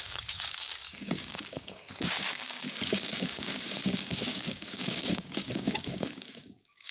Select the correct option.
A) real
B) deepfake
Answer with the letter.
B